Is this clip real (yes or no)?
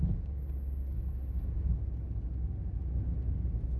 yes